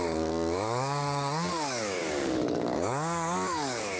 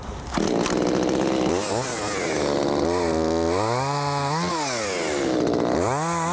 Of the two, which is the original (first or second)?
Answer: second